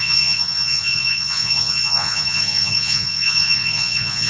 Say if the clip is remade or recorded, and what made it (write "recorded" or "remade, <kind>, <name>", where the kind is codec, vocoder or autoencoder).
remade, vocoder, Vocos